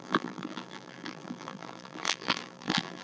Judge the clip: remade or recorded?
remade